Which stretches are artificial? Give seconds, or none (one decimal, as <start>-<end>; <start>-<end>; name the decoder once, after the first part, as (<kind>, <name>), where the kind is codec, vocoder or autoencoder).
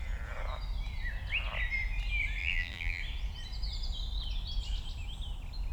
2.4-3.0 (vocoder, BigVGAN v2)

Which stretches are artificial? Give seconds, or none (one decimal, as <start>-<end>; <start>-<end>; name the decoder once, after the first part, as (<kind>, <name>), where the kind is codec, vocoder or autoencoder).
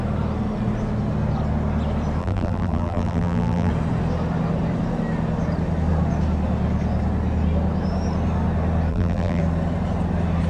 2.2-3.7 (vocoder, BigVGAN v2); 8.9-9.4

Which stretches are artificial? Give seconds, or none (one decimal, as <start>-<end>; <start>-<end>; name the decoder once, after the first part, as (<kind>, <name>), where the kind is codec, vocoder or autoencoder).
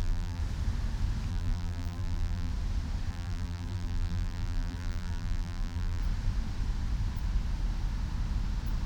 0.0-0.4 (vocoder, BigVGAN v2); 1.3-2.5; 3.1-6.0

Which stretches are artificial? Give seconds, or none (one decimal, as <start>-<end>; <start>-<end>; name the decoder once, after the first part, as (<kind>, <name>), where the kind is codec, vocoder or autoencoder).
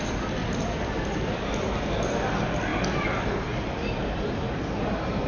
0.4-2.1 (vocoder, BigVGAN v2)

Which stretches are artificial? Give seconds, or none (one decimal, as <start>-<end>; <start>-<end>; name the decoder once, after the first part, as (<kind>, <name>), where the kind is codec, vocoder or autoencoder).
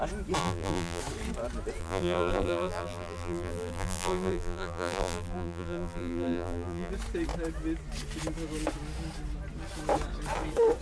0.4-1.0 (vocoder, BigVGAN v2); 1.8-6.9